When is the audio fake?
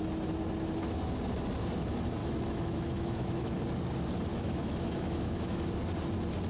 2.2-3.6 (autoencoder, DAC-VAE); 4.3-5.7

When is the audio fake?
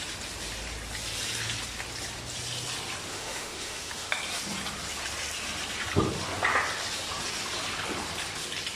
3.1-4.1 (autoencoder, DAC-VAE)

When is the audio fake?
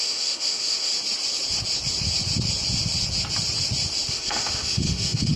0.0-0.9 (autoencoder, DAC-VAE); 4.1-5.4